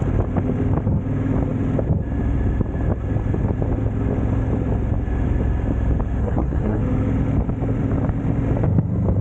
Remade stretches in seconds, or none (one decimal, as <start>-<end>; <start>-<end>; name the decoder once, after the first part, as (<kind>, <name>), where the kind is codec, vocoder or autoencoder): 6.2-6.8 (codec, SNAC)